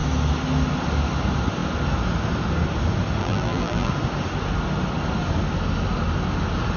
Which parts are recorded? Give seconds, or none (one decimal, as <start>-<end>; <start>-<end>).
0.0-3.2; 3.9-6.8